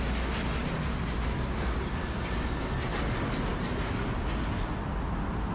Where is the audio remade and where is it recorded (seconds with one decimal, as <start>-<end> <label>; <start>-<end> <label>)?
0.0-5.5 recorded